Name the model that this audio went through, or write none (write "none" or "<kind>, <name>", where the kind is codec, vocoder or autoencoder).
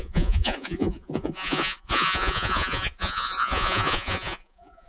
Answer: vocoder, Vocos